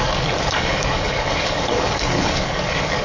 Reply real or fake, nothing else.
fake